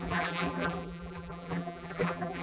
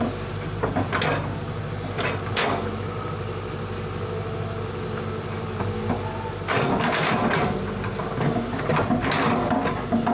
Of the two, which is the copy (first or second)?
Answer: first